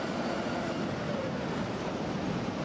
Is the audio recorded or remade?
recorded